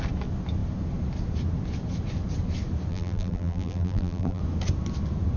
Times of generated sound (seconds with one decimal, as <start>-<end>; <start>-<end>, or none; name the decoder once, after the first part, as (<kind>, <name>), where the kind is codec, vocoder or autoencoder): 2.9-4.4 (vocoder, BigVGAN v2)